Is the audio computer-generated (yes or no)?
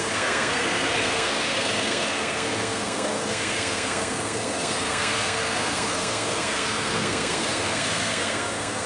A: yes